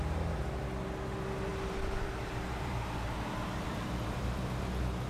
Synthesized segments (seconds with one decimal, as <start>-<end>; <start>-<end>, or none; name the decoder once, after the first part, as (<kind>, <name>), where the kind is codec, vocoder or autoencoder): 1.5-4.6 (vocoder, BigVGAN v2)